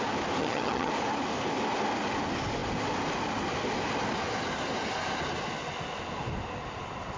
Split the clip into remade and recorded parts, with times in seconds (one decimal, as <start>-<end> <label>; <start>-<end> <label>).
0.0-0.4 recorded; 0.4-0.9 remade; 0.9-7.2 recorded